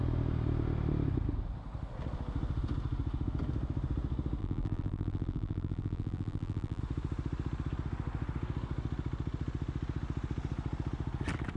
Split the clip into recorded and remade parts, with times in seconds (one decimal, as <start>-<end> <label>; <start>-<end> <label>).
0.0-4.4 recorded; 4.4-6.8 remade; 6.8-11.6 recorded